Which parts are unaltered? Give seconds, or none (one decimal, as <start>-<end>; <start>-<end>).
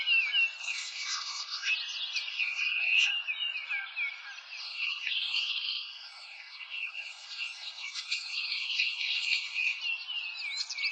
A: 0.0-0.6; 1.7-2.3; 3.1-4.6; 9.8-10.9